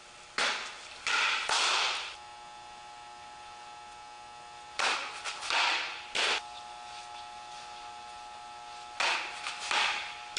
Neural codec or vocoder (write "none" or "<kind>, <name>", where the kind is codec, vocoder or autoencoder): none